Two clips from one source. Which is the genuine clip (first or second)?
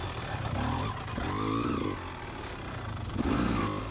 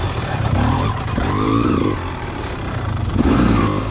first